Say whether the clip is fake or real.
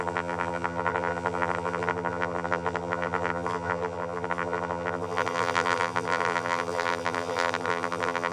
fake